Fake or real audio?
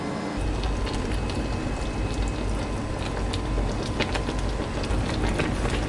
real